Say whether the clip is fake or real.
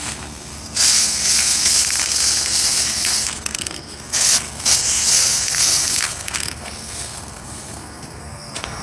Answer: fake